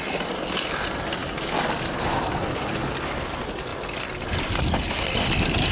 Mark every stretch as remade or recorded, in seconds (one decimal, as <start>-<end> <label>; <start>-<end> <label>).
0.0-5.7 recorded